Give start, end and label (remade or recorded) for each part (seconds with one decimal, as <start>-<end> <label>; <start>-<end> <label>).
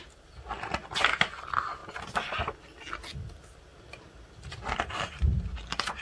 0.0-6.0 recorded